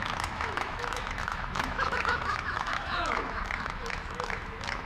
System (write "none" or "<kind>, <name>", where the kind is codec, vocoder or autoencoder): autoencoder, DAC-VAE